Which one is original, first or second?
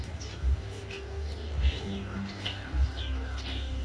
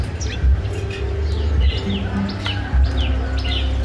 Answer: second